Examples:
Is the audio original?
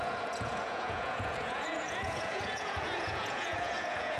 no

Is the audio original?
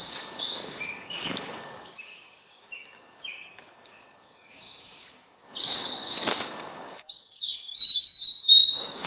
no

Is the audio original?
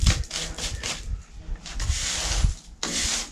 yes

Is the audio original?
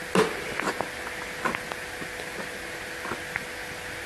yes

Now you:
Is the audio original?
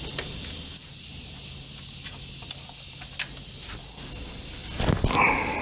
yes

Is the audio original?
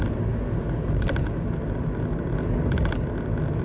yes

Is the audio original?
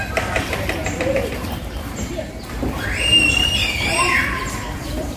no